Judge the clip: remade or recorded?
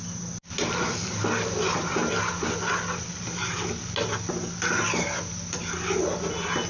recorded